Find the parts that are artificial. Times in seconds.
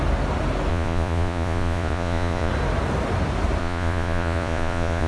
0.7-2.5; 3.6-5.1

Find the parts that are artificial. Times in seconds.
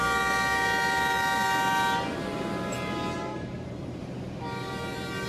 3.3-4.0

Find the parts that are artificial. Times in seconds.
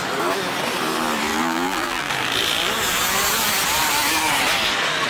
1.3-2.1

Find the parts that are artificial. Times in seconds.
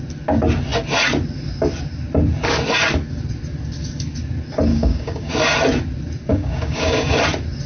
4.7-5.3; 6.3-7.2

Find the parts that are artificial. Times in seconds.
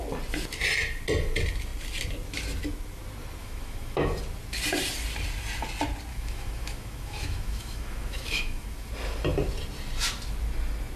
3.4-4.1; 6.1-8.9